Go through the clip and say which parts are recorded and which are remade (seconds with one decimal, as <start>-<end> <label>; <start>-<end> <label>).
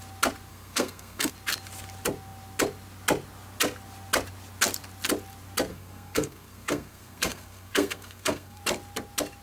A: 0.0-0.5 recorded; 0.5-1.3 remade; 1.3-5.7 recorded; 5.7-8.6 remade; 8.6-9.4 recorded